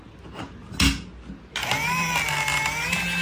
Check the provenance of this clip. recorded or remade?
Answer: recorded